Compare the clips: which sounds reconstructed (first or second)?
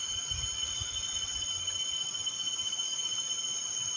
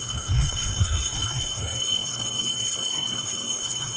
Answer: second